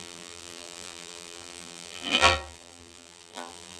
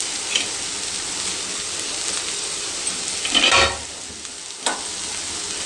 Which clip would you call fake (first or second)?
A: first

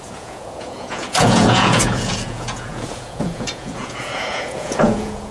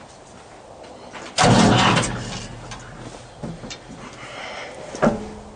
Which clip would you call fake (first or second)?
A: first